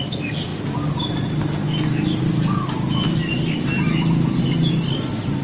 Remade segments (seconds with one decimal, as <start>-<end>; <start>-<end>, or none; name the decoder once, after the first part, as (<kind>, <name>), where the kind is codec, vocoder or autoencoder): none